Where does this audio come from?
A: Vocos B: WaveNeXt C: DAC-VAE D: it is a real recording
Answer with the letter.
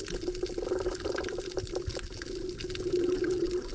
D